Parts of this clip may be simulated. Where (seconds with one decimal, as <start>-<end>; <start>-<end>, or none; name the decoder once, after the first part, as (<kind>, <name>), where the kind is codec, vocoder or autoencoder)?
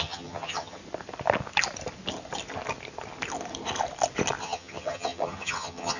0.0-0.8 (vocoder, HiFi-GAN); 4.4-6.0